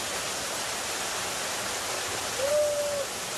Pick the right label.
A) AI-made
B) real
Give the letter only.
B